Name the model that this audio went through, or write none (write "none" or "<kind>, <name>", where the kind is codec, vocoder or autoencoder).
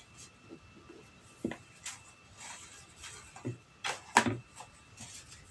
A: none